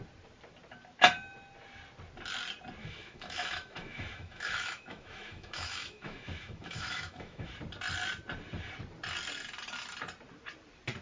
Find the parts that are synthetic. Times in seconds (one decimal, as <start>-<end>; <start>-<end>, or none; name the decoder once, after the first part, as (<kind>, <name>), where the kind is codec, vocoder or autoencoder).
2.8-7.5 (autoencoder, DAC-VAE)